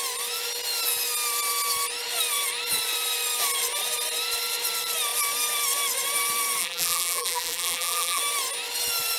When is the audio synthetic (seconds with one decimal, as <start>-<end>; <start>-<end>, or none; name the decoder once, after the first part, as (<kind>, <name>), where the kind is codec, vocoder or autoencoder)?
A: 6.6-8.2 (vocoder, BigVGAN v2)

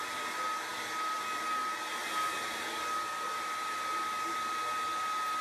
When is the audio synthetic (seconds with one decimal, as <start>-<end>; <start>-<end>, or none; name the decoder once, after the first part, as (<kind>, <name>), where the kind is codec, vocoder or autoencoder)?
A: none